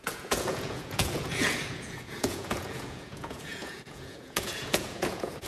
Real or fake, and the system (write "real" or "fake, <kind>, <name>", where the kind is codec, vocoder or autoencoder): fake, vocoder, Vocos